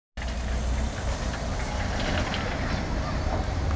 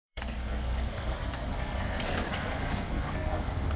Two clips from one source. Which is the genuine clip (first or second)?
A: first